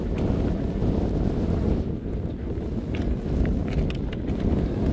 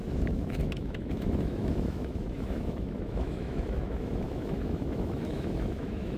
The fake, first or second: second